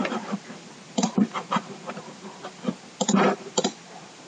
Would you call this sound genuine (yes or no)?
yes